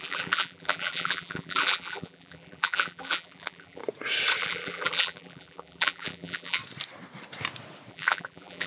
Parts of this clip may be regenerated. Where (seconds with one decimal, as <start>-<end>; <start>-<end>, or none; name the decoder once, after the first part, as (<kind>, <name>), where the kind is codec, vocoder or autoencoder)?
0.0-3.8 (vocoder, BigVGAN v2); 4.4-6.6; 7.9-8.7